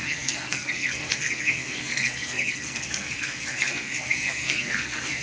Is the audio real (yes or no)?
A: no